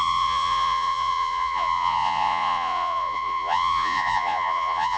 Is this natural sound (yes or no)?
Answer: no